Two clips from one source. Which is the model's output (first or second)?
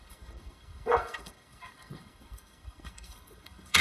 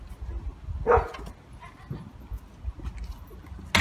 first